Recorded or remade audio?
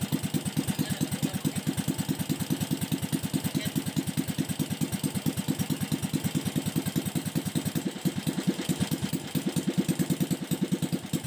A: recorded